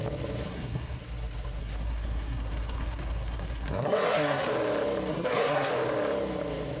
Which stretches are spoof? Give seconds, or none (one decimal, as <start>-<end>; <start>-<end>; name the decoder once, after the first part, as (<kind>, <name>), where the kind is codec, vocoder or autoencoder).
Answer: 0.5-1.0 (codec, SNAC); 1.6-4.5; 5.1-5.7